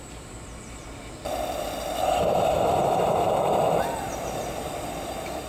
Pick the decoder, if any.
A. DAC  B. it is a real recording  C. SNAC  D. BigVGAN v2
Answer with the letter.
D